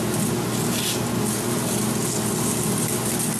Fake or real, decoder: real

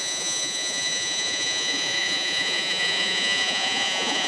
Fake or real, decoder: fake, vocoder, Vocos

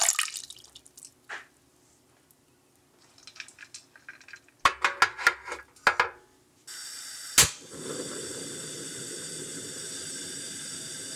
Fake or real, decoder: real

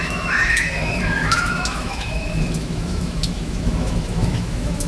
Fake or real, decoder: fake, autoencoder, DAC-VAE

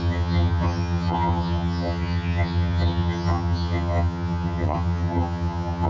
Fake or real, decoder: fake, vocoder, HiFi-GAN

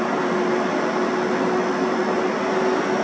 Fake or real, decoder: real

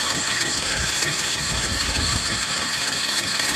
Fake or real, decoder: fake, codec, SNAC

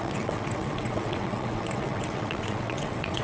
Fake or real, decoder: fake, vocoder, WaveNeXt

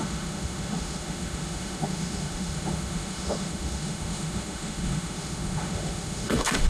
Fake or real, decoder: fake, autoencoder, DAC-VAE